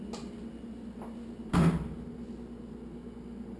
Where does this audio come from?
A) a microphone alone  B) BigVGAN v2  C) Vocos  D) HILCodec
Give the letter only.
A